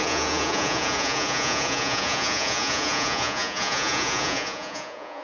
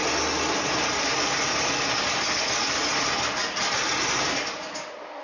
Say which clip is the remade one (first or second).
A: first